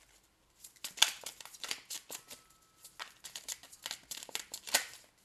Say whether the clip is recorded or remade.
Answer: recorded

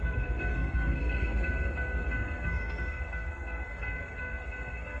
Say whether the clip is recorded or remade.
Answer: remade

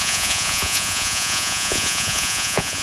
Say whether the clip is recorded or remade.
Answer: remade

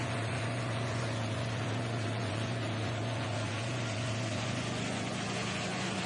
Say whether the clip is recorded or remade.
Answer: remade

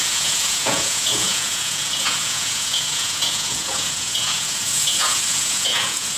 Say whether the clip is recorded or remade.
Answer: remade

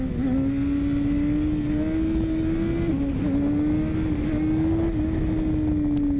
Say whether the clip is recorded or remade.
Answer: recorded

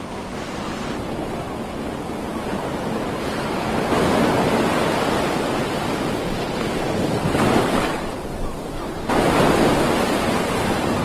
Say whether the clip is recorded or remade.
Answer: recorded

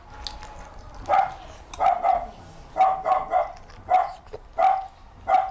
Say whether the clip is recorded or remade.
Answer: recorded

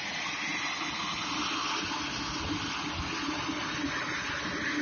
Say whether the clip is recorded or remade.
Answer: recorded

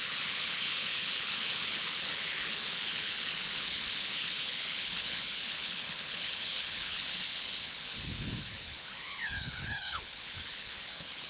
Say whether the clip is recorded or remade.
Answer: remade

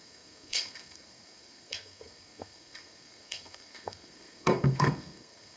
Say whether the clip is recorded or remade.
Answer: remade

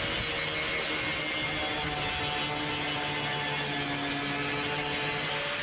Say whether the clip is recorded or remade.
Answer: recorded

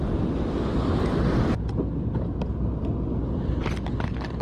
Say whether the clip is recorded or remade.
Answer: recorded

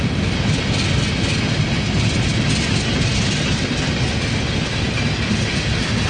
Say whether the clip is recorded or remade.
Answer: recorded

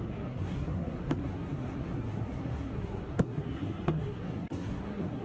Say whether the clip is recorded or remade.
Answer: remade